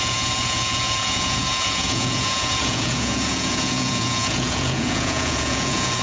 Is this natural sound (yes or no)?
no